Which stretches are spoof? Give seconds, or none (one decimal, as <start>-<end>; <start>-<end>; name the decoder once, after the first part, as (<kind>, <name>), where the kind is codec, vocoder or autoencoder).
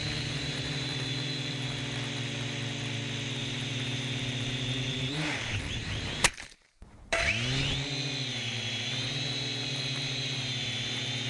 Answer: 0.0-1.8 (vocoder, BigVGAN v2); 3.4-7.3; 8.3-11.3